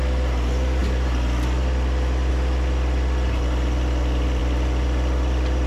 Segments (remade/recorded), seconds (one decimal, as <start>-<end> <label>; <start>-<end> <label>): 0.0-0.8 recorded; 0.8-2.3 remade; 2.3-4.4 recorded; 4.4-5.7 remade